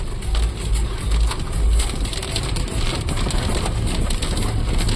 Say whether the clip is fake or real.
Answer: real